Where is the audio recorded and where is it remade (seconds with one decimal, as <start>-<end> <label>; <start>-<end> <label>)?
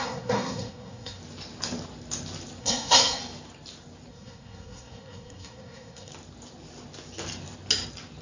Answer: 0.0-1.2 remade; 1.2-2.6 recorded; 2.6-3.2 remade; 3.2-4.1 recorded; 4.1-6.1 remade; 6.1-8.2 recorded